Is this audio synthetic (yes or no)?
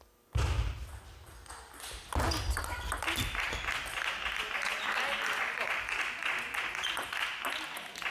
no